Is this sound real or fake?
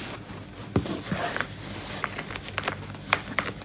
real